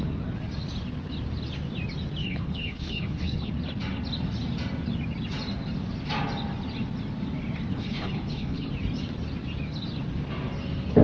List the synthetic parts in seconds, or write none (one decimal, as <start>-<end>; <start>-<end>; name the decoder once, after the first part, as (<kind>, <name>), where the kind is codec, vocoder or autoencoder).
2.2-3.5 (codec, HILCodec); 7.7-8.7